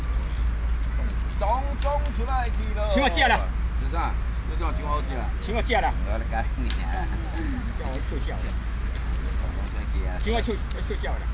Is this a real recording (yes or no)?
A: yes